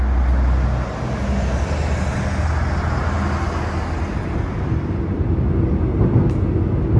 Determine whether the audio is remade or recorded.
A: recorded